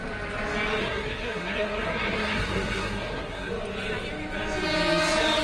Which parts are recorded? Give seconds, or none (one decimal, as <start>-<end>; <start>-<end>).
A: 0.0-0.8; 3.5-5.4